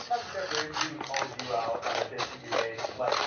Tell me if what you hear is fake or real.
real